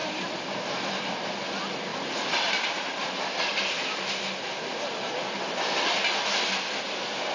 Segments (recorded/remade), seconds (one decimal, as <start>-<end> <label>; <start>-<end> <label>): 0.0-1.2 remade; 1.2-1.9 recorded; 1.9-4.1 remade; 4.1-7.3 recorded